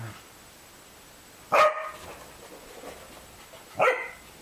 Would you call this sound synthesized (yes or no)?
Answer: no